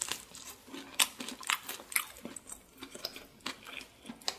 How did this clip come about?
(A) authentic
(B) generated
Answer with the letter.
A